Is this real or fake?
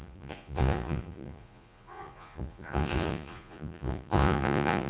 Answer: fake